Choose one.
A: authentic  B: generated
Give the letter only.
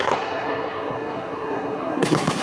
B